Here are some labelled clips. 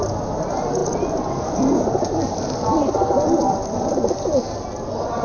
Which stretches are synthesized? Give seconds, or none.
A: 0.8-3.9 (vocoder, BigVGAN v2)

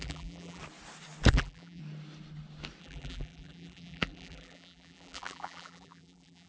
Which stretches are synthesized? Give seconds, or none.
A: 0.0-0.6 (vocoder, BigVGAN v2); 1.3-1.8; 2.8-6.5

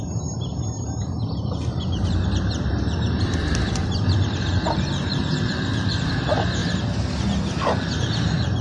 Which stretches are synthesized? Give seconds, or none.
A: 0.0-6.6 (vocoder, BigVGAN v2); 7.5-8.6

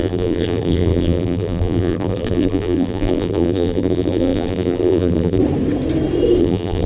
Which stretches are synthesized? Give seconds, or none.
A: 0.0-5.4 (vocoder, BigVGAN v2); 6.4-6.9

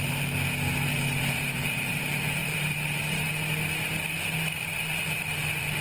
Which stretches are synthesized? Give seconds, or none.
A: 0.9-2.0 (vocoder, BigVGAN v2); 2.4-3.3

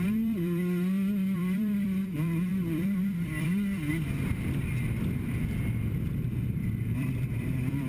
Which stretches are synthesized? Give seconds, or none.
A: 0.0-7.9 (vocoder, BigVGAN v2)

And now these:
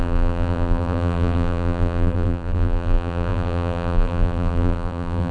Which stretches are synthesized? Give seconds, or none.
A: 0.0-5.3 (vocoder, BigVGAN v2)